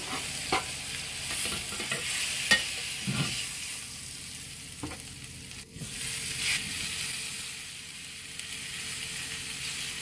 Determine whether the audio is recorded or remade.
recorded